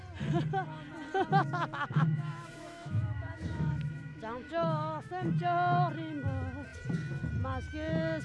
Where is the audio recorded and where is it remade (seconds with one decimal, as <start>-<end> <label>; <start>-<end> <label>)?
0.0-1.4 recorded; 1.4-5.3 remade; 5.3-8.2 recorded